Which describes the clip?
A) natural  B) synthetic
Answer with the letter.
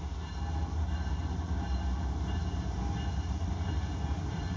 A